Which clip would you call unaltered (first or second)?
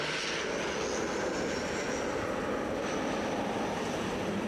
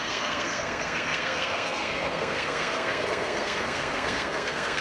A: first